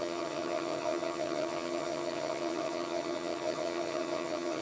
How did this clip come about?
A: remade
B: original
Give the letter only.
A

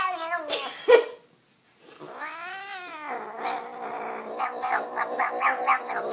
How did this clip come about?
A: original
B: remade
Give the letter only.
A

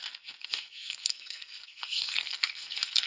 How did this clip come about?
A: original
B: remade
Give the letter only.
B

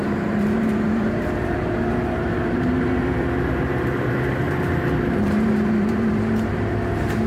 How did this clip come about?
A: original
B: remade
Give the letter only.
B